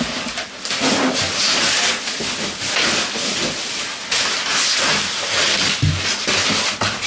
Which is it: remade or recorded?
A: recorded